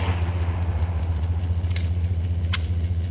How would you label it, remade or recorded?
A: remade